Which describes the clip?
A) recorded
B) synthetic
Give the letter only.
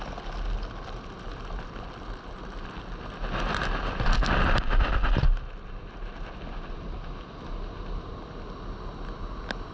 A